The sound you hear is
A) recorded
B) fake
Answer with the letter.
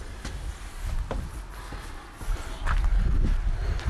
A